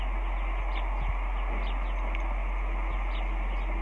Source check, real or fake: real